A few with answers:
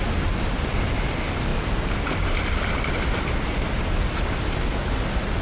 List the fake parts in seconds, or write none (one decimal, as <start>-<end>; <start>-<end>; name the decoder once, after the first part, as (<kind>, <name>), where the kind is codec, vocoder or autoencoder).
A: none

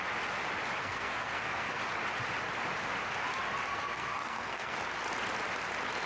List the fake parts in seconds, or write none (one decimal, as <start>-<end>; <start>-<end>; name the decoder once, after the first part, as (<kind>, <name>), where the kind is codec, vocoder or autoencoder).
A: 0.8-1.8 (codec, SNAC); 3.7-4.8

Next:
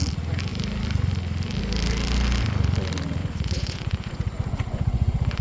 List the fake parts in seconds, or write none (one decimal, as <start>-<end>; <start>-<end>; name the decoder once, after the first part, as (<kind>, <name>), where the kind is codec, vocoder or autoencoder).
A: 3.2-5.4 (vocoder, Vocos)

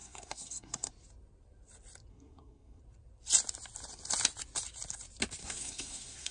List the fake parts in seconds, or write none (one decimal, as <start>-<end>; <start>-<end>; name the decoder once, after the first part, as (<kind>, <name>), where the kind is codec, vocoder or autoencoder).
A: 0.0-0.9 (codec, SNAC); 2.1-2.8; 5.4-6.3